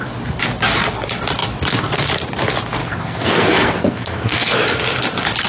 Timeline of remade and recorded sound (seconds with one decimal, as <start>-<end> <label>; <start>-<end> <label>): 0.0-2.8 recorded; 2.8-4.5 remade; 4.5-5.5 recorded